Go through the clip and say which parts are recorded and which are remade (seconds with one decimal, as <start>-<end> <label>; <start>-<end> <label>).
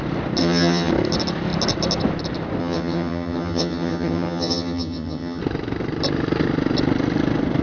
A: 0.0-0.4 recorded; 0.4-0.9 remade; 0.9-2.6 recorded; 2.6-5.4 remade; 5.4-7.6 recorded